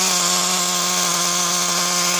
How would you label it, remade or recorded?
recorded